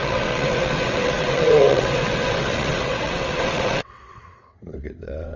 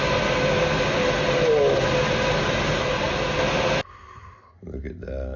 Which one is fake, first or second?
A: first